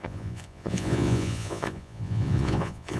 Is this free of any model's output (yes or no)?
no